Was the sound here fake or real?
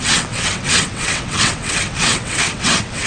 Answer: fake